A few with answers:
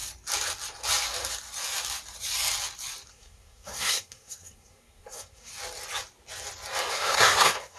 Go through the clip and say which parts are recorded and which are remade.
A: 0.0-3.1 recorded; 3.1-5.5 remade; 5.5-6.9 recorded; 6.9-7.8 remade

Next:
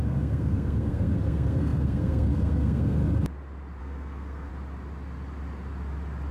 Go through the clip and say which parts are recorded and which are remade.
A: 0.0-3.0 remade; 3.0-3.8 recorded; 3.8-4.5 remade; 4.5-6.3 recorded

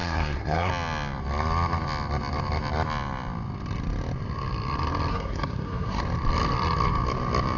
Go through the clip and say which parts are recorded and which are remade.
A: 0.0-0.7 remade; 0.7-5.1 recorded; 5.1-6.0 remade; 6.0-7.6 recorded

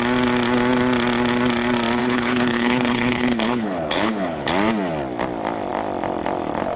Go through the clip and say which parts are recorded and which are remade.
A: 0.0-2.0 recorded; 2.0-4.5 remade; 4.5-6.8 recorded

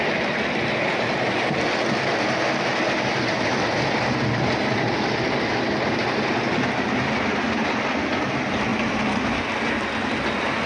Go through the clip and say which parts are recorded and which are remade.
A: 0.0-10.7 recorded